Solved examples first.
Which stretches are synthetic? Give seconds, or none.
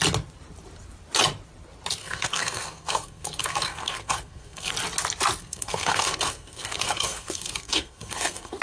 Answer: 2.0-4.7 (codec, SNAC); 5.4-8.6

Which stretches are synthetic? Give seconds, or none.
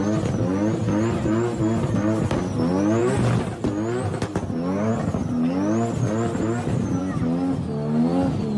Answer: none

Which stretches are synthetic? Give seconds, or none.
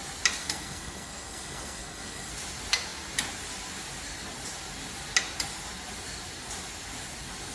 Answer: 0.4-2.3 (codec, SNAC)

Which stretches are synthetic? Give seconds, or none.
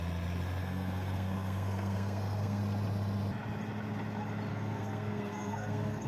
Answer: 0.6-2.6 (codec, SNAC); 4.5-6.1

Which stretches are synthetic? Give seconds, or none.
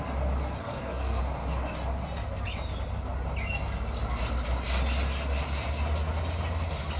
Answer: 0.6-1.2 (codec, SNAC)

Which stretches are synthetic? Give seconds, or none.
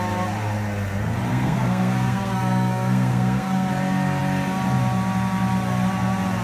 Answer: 1.3-3.7 (codec, SNAC)